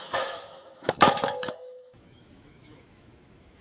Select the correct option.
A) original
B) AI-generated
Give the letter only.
B